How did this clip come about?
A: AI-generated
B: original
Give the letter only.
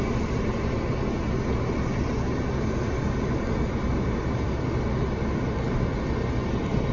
B